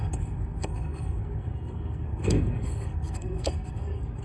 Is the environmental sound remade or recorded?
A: remade